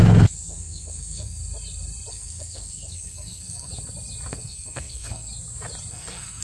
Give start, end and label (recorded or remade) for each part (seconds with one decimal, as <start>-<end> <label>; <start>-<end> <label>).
0.0-1.4 remade; 1.4-2.1 recorded; 2.1-3.7 remade; 3.7-4.3 recorded; 4.3-5.3 remade; 5.3-5.9 recorded; 5.9-6.4 remade

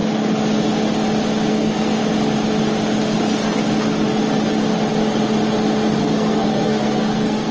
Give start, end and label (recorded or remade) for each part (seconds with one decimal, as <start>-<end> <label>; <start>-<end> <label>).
0.0-1.5 recorded; 1.5-2.0 remade; 2.0-6.0 recorded; 6.0-7.5 remade

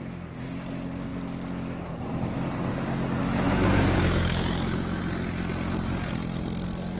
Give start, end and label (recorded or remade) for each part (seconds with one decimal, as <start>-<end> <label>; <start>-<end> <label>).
0.0-3.2 recorded; 3.2-5.0 remade; 5.0-7.0 recorded

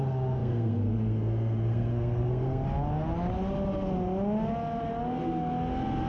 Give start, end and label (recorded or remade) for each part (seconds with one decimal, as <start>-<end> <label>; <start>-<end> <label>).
0.0-2.6 remade; 2.6-6.1 recorded